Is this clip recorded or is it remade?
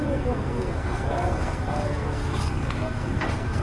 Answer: remade